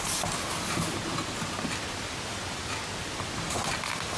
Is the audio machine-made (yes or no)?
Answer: no